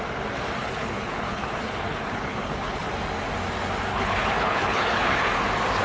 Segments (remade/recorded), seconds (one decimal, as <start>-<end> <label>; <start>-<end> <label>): 0.0-0.6 recorded; 0.6-2.9 remade; 2.9-3.9 recorded; 3.9-5.2 remade; 5.2-5.8 recorded

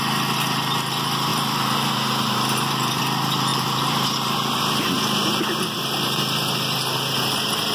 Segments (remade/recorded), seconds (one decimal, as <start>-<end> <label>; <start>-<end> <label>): 0.0-1.3 recorded; 1.3-3.0 remade; 3.0-3.5 recorded; 3.5-6.2 remade; 6.2-7.7 recorded

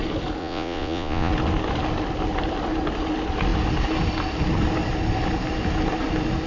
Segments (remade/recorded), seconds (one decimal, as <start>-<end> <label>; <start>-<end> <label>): 0.0-0.4 recorded; 0.4-1.3 remade; 1.3-6.5 recorded

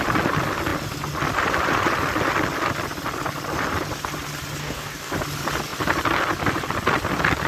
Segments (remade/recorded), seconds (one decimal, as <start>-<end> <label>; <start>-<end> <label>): 0.0-4.6 recorded; 4.6-5.1 remade; 5.1-7.5 recorded

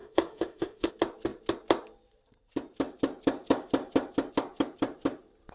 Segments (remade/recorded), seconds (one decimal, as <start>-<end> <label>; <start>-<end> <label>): 0.0-0.9 remade; 0.9-5.5 recorded

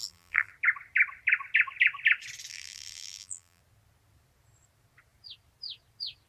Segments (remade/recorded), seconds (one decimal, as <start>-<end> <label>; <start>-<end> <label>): 0.0-0.5 remade; 0.5-2.5 recorded; 2.5-3.6 remade; 3.6-6.3 recorded

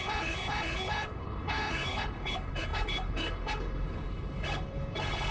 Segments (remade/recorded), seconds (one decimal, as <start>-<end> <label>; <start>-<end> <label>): 0.0-5.3 remade